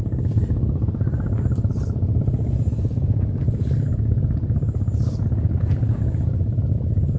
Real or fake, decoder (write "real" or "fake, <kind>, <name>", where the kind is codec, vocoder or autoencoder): real